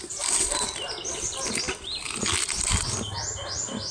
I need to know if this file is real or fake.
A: real